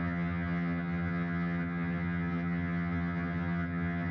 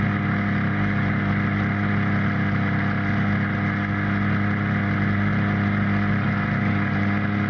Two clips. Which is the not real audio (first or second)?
first